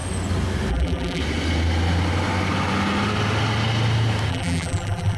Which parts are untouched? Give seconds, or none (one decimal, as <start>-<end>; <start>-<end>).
0.0-0.7; 1.2-4.3